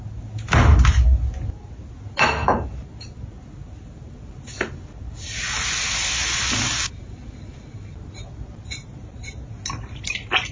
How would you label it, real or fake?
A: real